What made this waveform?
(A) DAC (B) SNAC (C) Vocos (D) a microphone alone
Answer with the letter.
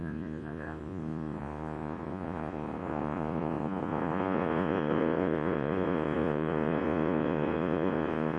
C